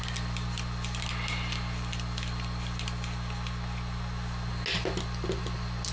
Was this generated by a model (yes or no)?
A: no